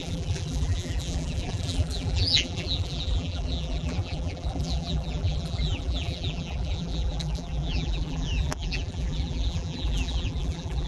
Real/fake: fake